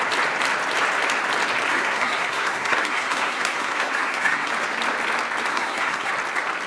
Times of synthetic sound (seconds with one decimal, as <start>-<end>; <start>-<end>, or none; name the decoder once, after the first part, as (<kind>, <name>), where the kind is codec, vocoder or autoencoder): 1.7-4.5 (codec, SNAC); 5.5-6.1